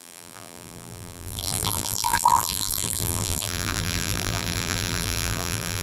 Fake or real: fake